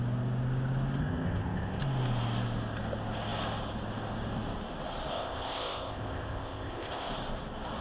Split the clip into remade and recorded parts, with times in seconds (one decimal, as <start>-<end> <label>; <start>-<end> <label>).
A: 0.0-1.0 recorded; 1.0-1.8 remade; 1.8-5.1 recorded; 5.1-7.1 remade; 7.1-7.8 recorded